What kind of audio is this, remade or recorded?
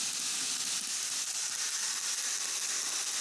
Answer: recorded